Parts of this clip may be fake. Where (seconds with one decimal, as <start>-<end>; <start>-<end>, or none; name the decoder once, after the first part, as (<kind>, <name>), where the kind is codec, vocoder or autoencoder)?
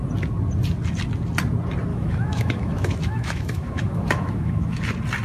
1.9-4.8 (autoencoder, DAC-VAE)